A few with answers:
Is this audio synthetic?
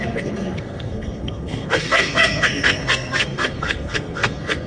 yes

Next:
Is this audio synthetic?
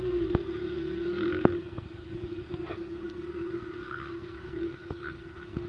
yes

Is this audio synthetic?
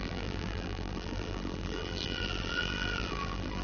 yes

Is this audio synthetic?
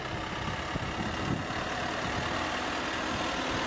no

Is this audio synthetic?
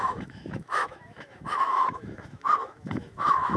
yes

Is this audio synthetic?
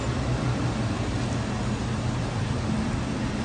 no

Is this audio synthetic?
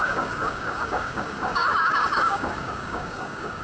yes